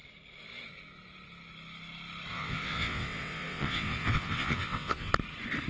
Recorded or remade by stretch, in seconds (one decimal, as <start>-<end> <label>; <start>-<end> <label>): 0.0-2.3 recorded; 2.3-5.1 remade; 5.1-5.7 recorded